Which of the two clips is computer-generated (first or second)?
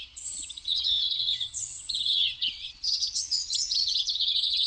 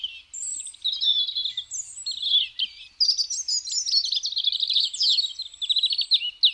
first